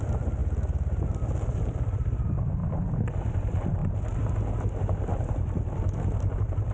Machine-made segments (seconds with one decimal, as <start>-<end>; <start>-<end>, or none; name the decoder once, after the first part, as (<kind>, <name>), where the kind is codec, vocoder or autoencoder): none